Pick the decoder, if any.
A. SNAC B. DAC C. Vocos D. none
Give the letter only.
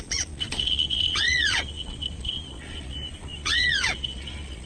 C